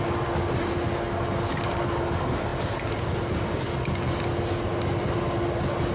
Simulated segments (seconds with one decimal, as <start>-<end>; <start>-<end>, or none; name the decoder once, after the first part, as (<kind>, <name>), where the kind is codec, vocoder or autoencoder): none